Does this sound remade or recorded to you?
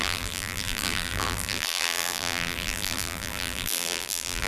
remade